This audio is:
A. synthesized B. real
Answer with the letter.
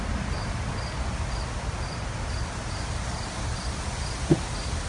B